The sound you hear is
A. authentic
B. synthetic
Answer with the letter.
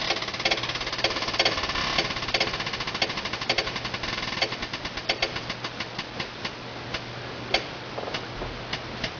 A